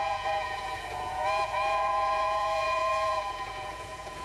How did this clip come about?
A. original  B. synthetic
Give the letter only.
B